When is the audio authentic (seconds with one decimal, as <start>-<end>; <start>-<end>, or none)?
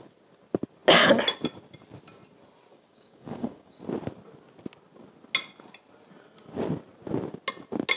0.0-2.7; 3.8-8.0